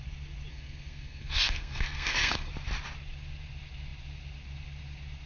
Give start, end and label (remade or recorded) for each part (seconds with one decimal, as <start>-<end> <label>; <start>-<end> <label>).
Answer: 0.0-0.5 recorded; 0.5-2.5 remade; 2.5-5.3 recorded